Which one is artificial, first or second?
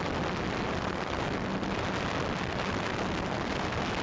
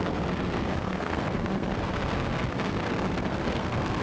second